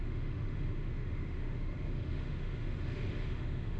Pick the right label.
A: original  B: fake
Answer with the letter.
B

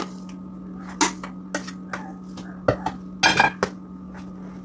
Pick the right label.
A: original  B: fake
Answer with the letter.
A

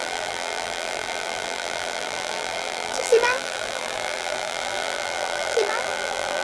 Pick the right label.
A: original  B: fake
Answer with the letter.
B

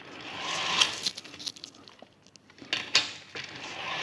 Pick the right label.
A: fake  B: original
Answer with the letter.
B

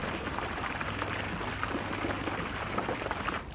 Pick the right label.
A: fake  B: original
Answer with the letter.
B